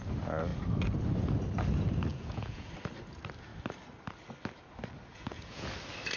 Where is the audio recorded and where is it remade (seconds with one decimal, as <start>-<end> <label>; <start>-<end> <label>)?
0.0-2.1 recorded; 2.1-2.7 remade; 2.7-5.1 recorded; 5.1-5.7 remade; 5.7-6.2 recorded